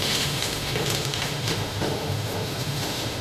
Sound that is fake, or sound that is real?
fake